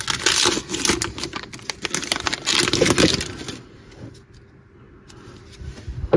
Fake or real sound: real